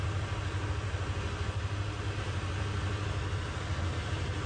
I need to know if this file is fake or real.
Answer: real